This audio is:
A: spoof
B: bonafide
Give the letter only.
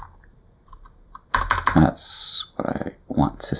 B